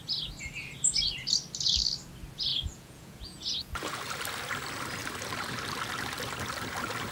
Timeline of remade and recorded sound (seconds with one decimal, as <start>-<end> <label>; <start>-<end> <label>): 0.0-2.5 recorded; 2.5-4.0 remade; 4.0-7.1 recorded